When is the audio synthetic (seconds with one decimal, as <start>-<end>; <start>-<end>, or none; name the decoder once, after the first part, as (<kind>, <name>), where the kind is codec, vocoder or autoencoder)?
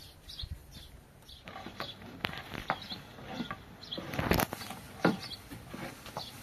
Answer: none